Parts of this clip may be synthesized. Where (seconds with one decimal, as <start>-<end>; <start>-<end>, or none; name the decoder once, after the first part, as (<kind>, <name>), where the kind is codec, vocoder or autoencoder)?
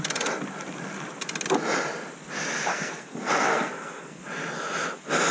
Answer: 2.7-4.2 (codec, SNAC)